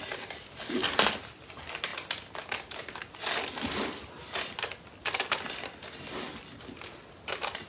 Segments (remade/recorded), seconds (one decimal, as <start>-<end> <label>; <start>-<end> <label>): 0.0-7.7 recorded

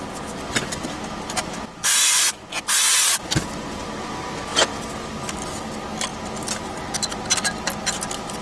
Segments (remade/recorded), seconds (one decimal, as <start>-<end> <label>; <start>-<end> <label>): 0.0-1.8 recorded; 1.8-2.6 remade; 2.6-8.4 recorded